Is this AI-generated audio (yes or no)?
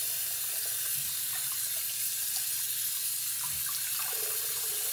no